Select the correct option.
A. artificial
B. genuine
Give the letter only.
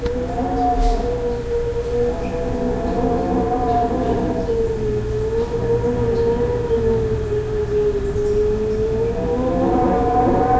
B